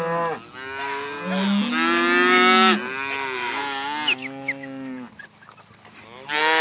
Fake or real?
real